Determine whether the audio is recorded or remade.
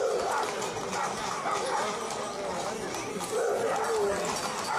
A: recorded